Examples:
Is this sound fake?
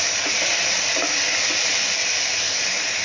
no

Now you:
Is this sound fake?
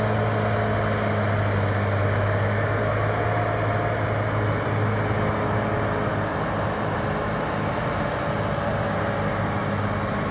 no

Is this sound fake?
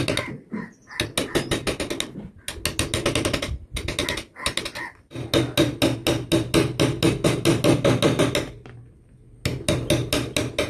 no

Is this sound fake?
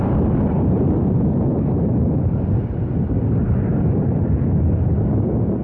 no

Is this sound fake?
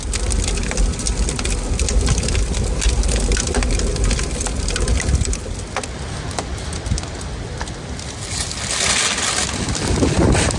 no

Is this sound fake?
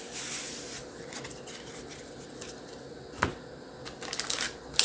no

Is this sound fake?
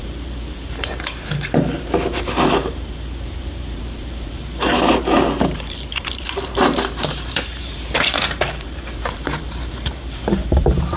yes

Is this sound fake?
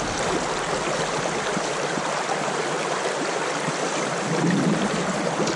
yes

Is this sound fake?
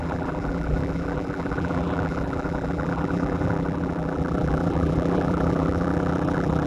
yes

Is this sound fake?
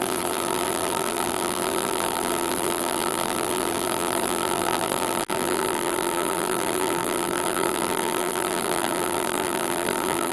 yes